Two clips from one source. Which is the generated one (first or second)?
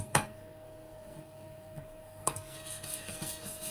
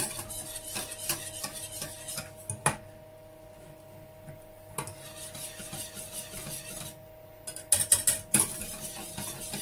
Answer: first